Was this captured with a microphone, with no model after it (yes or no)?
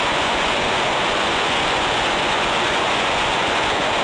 no